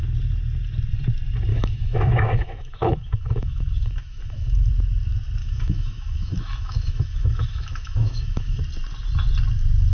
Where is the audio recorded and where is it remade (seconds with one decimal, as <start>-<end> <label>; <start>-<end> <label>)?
0.0-1.5 recorded; 1.5-4.7 remade; 4.7-5.4 recorded; 5.4-8.6 remade; 8.6-9.9 recorded